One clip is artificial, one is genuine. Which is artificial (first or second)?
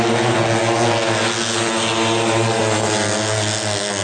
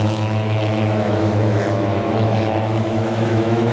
second